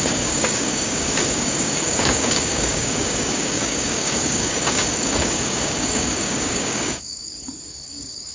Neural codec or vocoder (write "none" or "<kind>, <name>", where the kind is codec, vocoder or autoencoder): codec, DAC